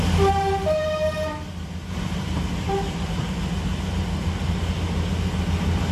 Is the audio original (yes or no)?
yes